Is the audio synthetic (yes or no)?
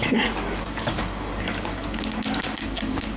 yes